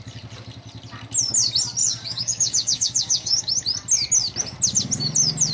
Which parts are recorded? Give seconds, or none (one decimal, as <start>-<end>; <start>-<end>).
0.0-1.8; 3.5-5.5